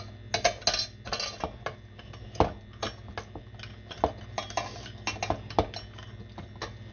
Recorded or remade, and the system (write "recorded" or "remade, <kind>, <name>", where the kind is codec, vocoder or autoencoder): recorded